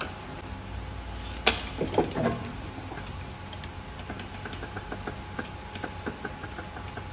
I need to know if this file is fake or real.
real